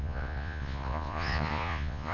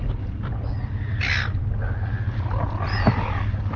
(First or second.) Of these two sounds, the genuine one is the second